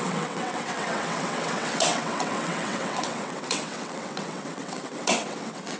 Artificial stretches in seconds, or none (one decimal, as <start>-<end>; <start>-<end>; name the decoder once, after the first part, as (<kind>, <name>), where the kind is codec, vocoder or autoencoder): 0.0-5.8 (vocoder, WaveNeXt)